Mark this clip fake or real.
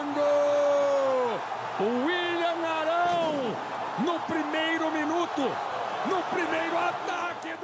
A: real